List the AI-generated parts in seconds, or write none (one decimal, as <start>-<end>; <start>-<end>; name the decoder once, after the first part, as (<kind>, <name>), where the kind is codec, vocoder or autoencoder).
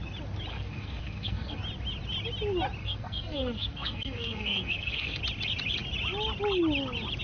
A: 0.5-1.6 (codec, SNAC); 2.8-5.2